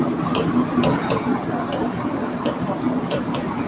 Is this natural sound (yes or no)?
yes